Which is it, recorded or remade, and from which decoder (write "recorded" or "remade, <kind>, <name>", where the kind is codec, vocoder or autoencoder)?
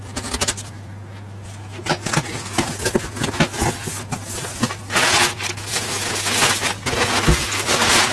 recorded